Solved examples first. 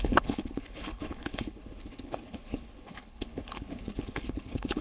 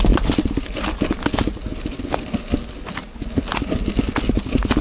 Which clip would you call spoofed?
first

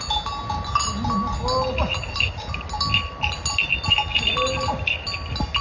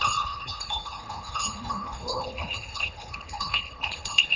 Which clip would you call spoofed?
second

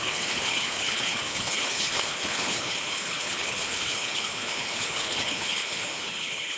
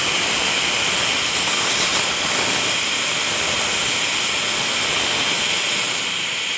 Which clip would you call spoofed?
first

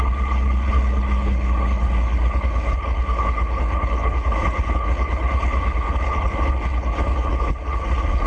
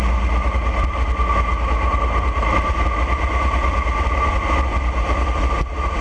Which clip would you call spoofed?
first